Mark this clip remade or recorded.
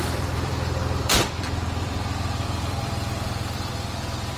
remade